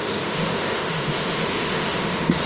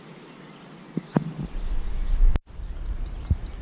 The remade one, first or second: first